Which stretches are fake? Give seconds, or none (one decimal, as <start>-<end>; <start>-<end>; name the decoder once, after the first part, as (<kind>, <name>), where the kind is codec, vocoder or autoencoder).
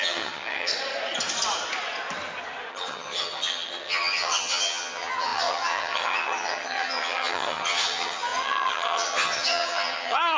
0.0-0.7 (vocoder, HiFi-GAN); 2.7-10.4